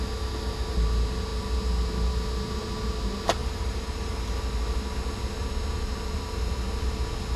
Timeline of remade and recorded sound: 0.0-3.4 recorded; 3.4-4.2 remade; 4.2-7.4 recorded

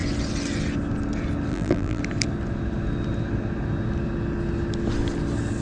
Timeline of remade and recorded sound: 0.0-1.5 recorded; 1.5-2.0 remade; 2.0-5.6 recorded